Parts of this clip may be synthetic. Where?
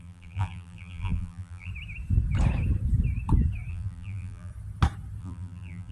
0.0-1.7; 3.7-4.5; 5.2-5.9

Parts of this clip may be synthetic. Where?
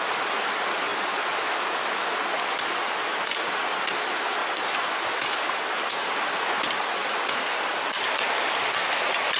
4.4-8.4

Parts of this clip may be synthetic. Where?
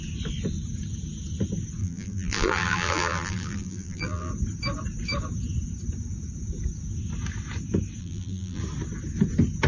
1.8-4.3; 8.0-8.6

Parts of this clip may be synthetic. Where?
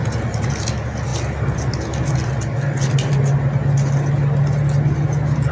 none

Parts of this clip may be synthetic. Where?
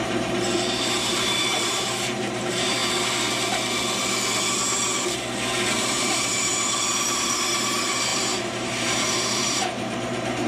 0.0-2.8; 5.8-10.5